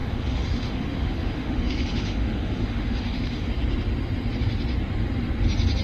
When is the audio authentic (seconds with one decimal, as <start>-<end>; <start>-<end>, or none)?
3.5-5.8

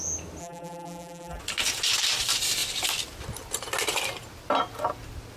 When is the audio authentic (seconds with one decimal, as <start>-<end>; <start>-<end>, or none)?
0.0-0.4; 1.4-5.4

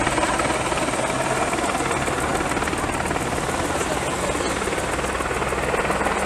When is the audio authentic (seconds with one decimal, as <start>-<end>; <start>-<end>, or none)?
0.0-6.3

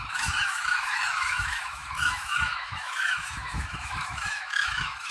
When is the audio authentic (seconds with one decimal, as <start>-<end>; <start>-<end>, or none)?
none

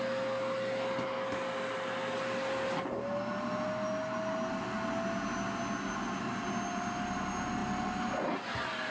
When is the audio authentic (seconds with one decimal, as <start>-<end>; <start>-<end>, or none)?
0.0-8.9

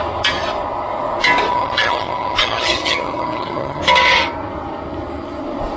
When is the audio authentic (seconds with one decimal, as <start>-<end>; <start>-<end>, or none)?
0.0-1.5; 3.8-5.8

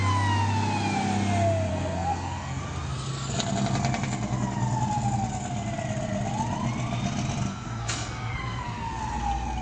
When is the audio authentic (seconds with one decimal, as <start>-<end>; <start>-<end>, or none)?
0.0-1.7; 2.6-7.5; 9.0-9.6